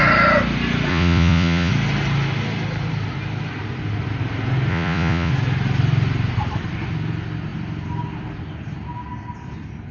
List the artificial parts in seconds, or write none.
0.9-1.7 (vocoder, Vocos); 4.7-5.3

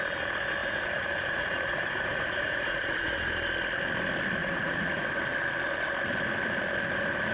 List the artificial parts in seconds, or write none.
0.6-3.3 (vocoder, Vocos); 4.4-5.1

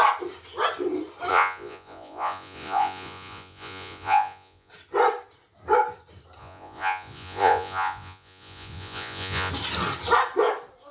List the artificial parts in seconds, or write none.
1.3-4.7 (vocoder, Vocos); 6.4-9.5

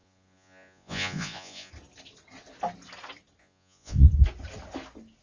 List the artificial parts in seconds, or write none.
0.0-1.7 (vocoder, Vocos); 3.4-4.1